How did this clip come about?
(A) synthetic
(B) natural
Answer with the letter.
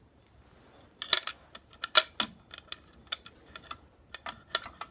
B